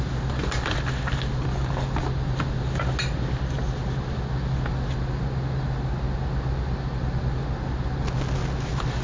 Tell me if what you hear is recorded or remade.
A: recorded